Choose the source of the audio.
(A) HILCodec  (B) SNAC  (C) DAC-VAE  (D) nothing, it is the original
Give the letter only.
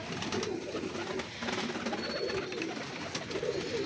D